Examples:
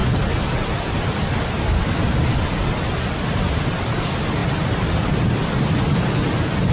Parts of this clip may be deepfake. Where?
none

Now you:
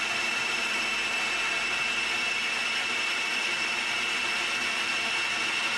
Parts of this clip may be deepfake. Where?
2.4-4.9

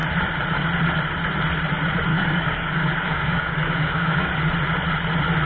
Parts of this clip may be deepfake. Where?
2.1-4.3

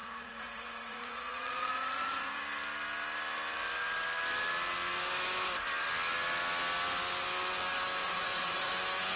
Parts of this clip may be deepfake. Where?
0.0-2.4; 8.0-8.7

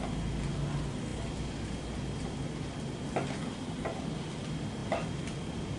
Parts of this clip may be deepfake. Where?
none